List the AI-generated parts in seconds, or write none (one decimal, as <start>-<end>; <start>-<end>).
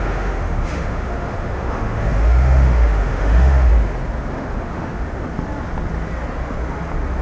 0.0-3.7; 4.3-5.3